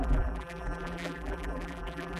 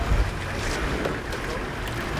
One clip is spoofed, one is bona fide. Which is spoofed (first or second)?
first